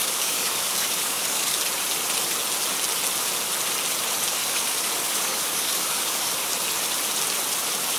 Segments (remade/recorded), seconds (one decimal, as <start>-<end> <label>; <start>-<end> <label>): 0.0-1.6 remade; 1.6-4.4 recorded; 4.4-6.5 remade; 6.5-8.0 recorded